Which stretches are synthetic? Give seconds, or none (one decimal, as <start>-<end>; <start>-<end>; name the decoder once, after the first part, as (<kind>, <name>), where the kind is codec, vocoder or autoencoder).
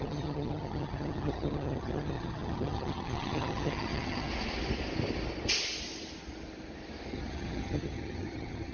0.0-4.3 (vocoder, HiFi-GAN); 7.1-8.7